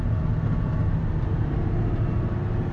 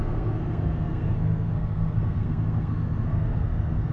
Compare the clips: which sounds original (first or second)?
first